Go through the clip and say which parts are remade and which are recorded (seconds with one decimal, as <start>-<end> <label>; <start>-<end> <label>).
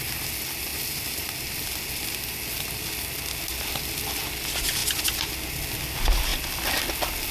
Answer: 0.0-7.3 recorded